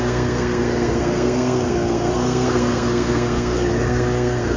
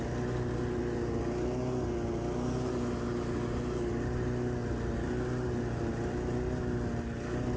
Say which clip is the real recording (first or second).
second